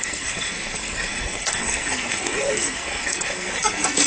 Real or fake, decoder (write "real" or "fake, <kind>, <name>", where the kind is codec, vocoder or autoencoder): fake, codec, SNAC